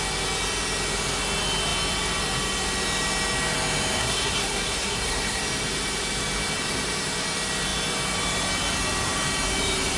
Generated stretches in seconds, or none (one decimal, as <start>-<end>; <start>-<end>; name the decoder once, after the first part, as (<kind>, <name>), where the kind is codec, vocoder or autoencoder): 4.0-5.4 (codec, SNAC)